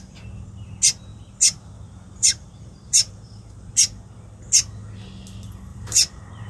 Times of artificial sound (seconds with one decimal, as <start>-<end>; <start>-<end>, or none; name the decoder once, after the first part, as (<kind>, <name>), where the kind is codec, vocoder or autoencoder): 1.1-3.7 (vocoder, BigVGAN v2); 5.7-6.5